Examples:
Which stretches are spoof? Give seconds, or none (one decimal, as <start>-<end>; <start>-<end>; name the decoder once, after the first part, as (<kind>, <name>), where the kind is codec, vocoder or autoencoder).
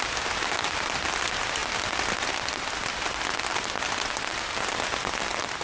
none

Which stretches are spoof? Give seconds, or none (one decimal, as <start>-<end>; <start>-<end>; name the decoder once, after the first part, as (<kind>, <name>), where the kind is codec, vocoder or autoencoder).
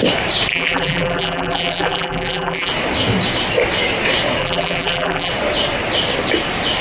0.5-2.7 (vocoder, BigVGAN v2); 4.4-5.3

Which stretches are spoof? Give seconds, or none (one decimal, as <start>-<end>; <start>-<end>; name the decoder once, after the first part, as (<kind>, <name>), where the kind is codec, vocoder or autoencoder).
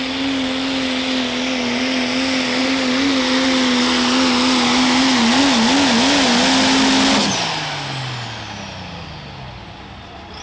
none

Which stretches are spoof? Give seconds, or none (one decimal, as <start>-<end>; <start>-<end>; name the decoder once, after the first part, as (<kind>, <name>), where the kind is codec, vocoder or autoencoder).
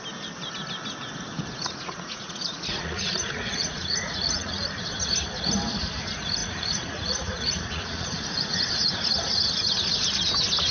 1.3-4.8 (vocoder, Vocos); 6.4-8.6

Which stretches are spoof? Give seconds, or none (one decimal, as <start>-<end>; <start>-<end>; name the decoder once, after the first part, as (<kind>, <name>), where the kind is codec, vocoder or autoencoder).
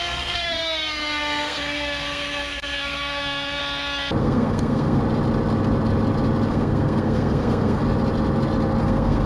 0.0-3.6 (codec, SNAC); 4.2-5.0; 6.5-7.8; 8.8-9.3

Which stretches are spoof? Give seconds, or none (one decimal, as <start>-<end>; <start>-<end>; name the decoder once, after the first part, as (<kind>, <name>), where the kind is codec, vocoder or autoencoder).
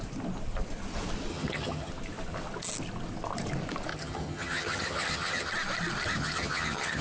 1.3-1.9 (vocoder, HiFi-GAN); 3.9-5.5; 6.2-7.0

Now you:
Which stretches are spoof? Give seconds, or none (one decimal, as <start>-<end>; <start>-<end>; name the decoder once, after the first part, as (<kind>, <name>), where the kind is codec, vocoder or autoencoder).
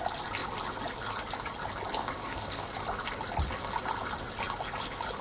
2.2-2.7 (codec, SNAC)